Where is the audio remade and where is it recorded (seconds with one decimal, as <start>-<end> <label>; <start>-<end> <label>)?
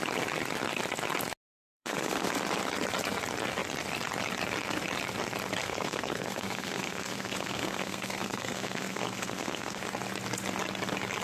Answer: 0.0-1.7 recorded; 1.7-2.3 remade; 2.3-5.6 recorded; 5.6-9.8 remade; 9.8-11.2 recorded